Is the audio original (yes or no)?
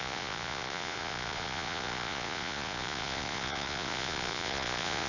no